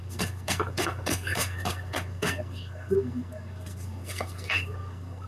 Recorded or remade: remade